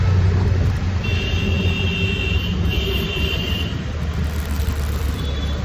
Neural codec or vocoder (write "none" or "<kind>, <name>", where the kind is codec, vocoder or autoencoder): none